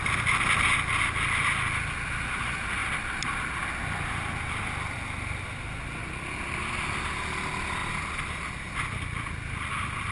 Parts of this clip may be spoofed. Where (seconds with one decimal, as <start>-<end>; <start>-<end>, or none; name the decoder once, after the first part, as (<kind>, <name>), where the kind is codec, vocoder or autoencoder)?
6.0-6.6 (vocoder, BigVGAN v2); 7.8-9.3